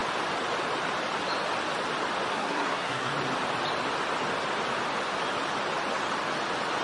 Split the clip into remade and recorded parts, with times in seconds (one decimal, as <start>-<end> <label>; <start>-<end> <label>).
0.0-2.3 recorded; 2.3-3.1 remade; 3.1-6.8 recorded